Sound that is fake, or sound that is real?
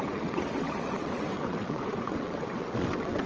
fake